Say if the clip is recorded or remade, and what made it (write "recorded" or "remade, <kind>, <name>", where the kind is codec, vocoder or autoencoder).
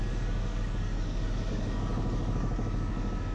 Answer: remade, codec, DAC